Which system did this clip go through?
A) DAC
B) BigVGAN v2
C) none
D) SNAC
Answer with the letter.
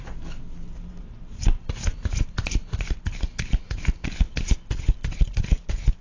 C